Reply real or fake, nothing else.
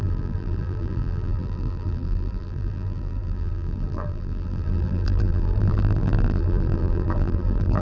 fake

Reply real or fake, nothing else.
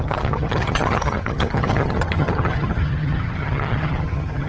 fake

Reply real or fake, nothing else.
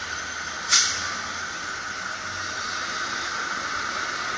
real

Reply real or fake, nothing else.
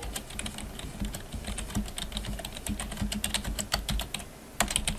real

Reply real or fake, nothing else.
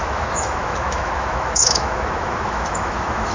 fake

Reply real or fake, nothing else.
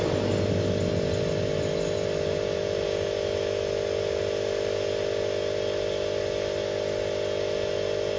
real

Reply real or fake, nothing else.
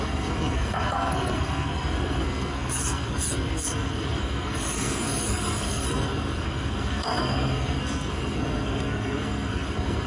fake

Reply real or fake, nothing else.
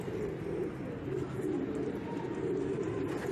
real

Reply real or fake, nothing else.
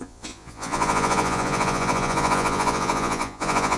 fake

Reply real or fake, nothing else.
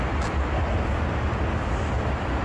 real